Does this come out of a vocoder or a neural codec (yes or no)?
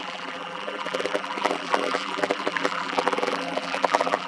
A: yes